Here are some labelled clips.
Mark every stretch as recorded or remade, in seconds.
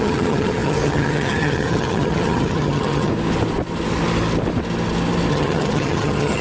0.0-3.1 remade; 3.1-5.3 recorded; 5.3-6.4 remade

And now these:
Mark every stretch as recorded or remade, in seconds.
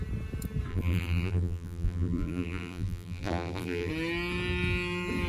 0.0-0.7 recorded; 0.7-3.9 remade; 3.9-5.3 recorded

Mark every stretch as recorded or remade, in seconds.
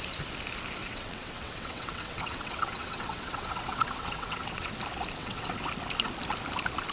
0.0-0.8 recorded; 0.8-4.7 remade; 4.7-5.2 recorded; 5.2-5.7 remade; 5.7-6.9 recorded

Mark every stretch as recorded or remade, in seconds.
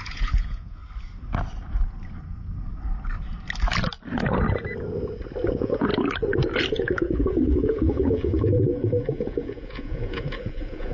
0.0-0.8 remade; 0.8-5.5 recorded; 5.5-5.9 remade; 5.9-6.7 recorded; 6.7-10.9 remade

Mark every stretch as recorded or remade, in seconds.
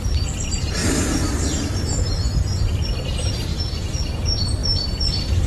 0.0-0.8 recorded; 0.8-1.5 remade; 1.5-5.5 recorded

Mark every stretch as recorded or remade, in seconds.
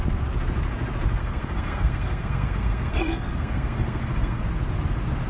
0.0-1.2 recorded; 1.2-4.4 remade; 4.4-5.3 recorded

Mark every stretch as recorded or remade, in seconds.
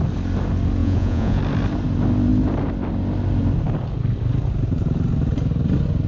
0.0-0.8 recorded; 0.8-1.4 remade; 1.4-6.1 recorded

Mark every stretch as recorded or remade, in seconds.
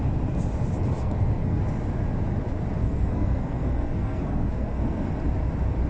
0.0-1.0 recorded; 1.0-1.6 remade; 1.6-2.8 recorded; 2.8-5.1 remade; 5.1-5.9 recorded